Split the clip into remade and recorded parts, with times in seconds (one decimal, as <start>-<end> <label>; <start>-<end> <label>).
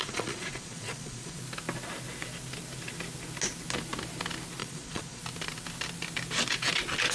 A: 0.0-1.4 remade; 1.4-4.6 recorded; 4.6-5.2 remade; 5.2-7.1 recorded